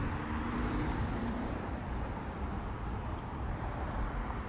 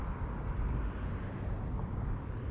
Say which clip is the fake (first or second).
first